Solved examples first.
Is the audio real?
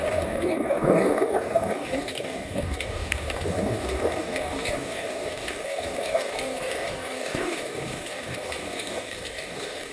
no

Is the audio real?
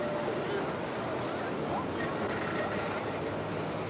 yes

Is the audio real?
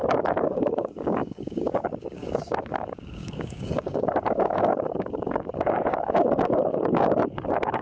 no